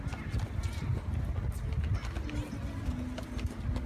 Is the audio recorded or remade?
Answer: recorded